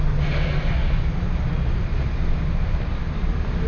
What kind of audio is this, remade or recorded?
recorded